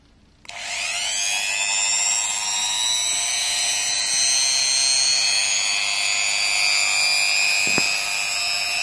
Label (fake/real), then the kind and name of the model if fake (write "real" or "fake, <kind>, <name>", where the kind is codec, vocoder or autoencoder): real